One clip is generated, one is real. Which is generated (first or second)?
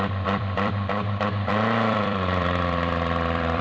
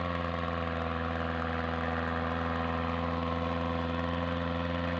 first